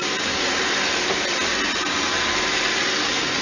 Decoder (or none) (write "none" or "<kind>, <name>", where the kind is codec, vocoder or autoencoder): none